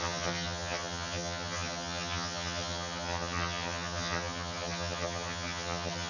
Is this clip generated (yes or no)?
yes